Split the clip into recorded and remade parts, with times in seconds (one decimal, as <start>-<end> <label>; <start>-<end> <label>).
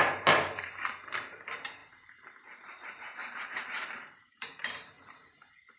0.0-5.8 remade